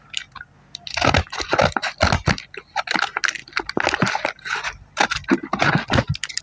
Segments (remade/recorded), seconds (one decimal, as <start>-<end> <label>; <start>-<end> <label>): 0.0-6.4 recorded